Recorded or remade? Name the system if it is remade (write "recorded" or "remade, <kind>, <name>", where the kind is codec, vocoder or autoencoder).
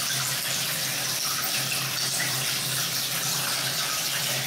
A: recorded